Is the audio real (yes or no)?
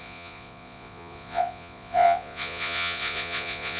no